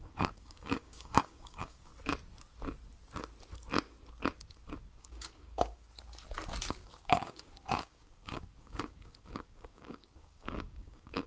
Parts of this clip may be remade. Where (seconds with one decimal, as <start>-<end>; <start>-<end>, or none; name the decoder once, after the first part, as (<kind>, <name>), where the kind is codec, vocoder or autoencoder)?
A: 0.0-1.9 (codec, DAC); 5.0-5.9; 6.7-11.3